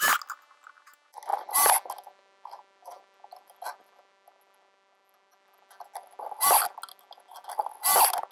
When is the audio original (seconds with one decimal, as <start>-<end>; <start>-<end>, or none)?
0.0-8.3